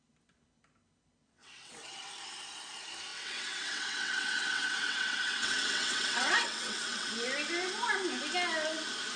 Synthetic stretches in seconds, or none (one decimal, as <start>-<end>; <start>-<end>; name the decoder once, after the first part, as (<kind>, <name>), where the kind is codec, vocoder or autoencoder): 1.2-2.1 (vocoder, WaveNeXt); 3.1-7.1